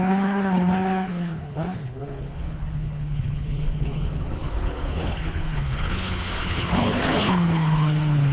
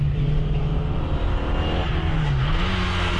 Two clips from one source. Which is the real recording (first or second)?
second